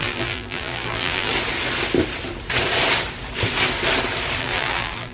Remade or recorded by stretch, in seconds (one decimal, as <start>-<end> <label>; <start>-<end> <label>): 0.0-1.3 remade; 1.3-4.4 recorded; 4.4-5.1 remade